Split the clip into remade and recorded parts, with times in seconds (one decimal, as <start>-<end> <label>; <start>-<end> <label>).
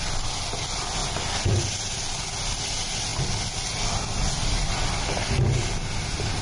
0.0-6.4 recorded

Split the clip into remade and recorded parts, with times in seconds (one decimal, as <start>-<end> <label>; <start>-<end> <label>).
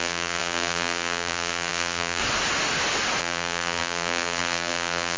0.0-2.2 remade; 2.2-3.2 recorded; 3.2-5.2 remade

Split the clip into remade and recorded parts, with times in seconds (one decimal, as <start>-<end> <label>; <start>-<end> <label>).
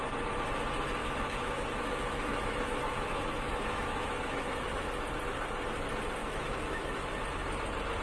0.0-1.0 recorded; 1.0-4.9 remade; 4.9-6.2 recorded; 6.2-7.2 remade; 7.2-8.0 recorded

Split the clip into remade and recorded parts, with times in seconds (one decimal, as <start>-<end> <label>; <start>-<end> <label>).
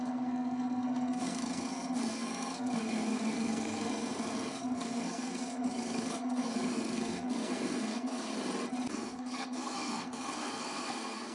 0.0-8.3 remade; 8.3-8.9 recorded; 8.9-11.3 remade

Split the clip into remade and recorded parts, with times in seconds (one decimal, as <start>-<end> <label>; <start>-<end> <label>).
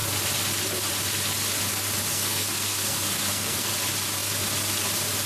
0.0-2.1 recorded; 2.1-3.7 remade; 3.7-5.3 recorded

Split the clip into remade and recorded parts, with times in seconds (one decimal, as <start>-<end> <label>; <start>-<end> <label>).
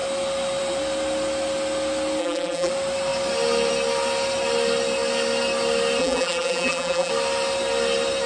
0.0-2.2 recorded; 2.2-2.7 remade; 2.7-6.0 recorded; 6.0-7.1 remade; 7.1-8.3 recorded